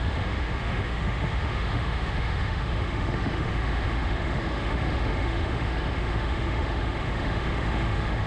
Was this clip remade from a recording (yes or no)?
yes